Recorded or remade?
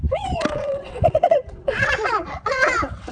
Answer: remade